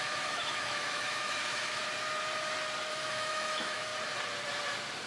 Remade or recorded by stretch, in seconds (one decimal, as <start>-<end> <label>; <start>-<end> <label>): 0.0-1.8 remade; 1.8-2.9 recorded; 2.9-3.9 remade; 3.9-5.1 recorded